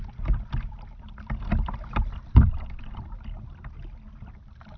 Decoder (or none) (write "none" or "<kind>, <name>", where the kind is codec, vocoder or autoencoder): none